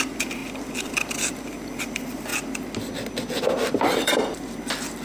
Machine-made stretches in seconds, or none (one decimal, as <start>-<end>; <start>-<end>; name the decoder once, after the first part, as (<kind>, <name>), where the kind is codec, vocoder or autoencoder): 0.0-2.3 (vocoder, BigVGAN v2); 3.7-5.0